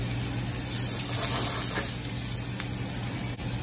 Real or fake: real